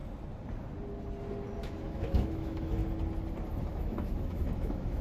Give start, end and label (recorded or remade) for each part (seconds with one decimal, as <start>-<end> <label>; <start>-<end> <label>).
0.0-1.6 recorded; 1.6-2.8 remade; 2.8-3.7 recorded; 3.7-5.0 remade